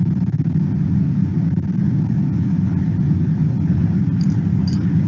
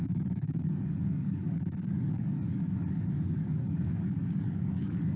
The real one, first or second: first